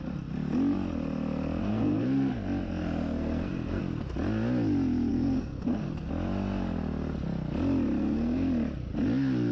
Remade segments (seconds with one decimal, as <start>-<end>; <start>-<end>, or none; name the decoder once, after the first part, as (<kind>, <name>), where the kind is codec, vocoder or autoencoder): 1.7-2.3 (codec, SNAC); 2.8-3.8; 5.1-6.1; 8.0-8.5